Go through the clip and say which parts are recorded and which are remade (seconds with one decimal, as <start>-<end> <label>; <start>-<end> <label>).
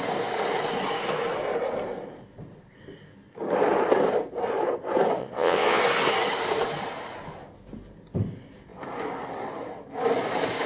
0.0-5.2 recorded; 5.2-5.8 remade; 5.8-10.7 recorded